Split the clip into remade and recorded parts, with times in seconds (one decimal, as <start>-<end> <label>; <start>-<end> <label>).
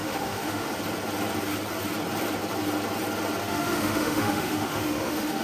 0.0-0.7 remade; 0.7-3.4 recorded; 3.4-5.4 remade